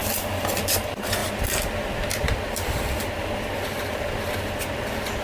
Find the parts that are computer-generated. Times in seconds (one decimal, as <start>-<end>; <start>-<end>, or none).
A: none